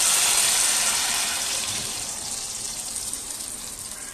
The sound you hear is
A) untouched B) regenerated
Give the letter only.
B